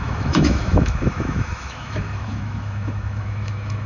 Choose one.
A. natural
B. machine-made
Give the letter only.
B